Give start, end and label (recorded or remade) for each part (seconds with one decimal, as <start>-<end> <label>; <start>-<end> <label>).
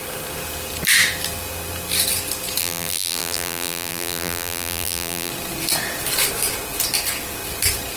0.0-2.6 recorded; 2.6-5.3 remade; 5.3-8.0 recorded